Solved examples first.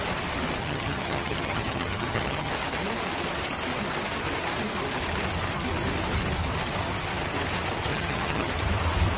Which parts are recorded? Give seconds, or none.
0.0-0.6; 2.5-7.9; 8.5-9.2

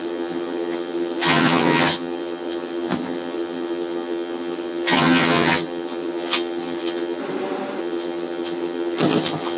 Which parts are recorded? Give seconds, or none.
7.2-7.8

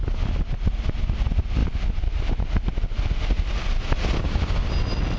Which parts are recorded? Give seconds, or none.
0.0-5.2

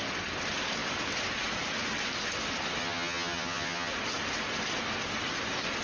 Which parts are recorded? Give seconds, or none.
0.0-2.8; 3.9-5.8

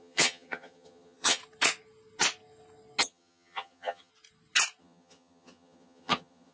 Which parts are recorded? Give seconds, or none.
1.4-3.0; 4.1-4.8

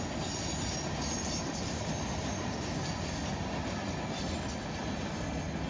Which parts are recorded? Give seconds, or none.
0.0-5.7